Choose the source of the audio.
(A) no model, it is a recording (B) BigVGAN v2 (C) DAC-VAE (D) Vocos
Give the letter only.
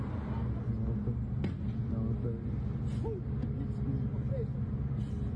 A